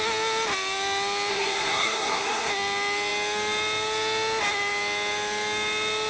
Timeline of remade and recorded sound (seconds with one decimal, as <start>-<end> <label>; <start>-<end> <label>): 0.0-1.3 recorded; 1.3-2.5 remade; 2.5-6.1 recorded